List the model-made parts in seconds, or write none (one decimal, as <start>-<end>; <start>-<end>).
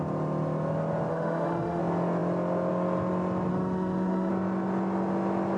1.1-1.8; 3.5-4.3